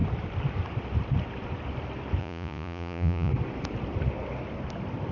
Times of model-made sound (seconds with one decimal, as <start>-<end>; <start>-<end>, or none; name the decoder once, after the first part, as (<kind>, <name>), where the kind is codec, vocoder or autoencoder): 2.2-3.3 (vocoder, Vocos)